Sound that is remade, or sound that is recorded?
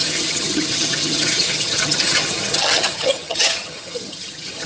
remade